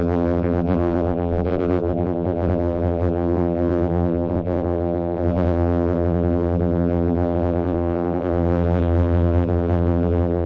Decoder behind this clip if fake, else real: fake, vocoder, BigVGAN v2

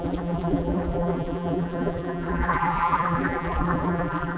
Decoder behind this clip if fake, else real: fake, vocoder, BigVGAN v2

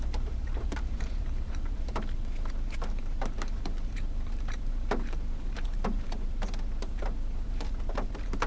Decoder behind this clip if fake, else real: fake, vocoder, BigVGAN v2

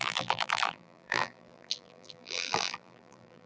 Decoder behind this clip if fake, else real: fake, vocoder, BigVGAN v2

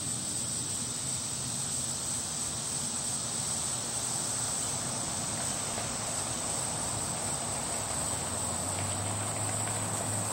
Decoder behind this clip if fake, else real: real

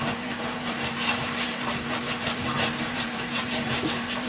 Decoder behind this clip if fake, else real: fake, vocoder, BigVGAN v2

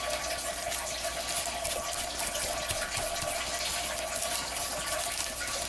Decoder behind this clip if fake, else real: real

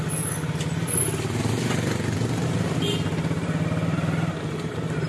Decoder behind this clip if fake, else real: real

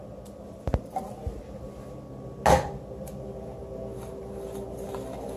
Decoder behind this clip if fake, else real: real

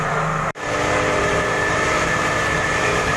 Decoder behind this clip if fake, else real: fake, vocoder, BigVGAN v2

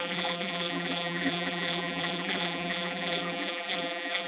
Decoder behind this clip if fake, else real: fake, vocoder, BigVGAN v2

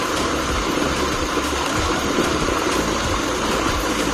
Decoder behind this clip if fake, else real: fake, vocoder, BigVGAN v2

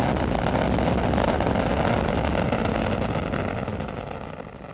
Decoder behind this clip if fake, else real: real